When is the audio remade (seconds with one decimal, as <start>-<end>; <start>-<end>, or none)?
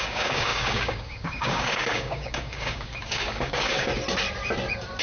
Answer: 0.0-3.9